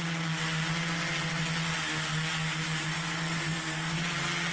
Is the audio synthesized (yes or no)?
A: no